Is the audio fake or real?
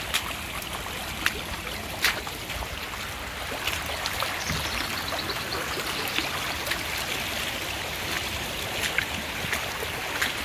real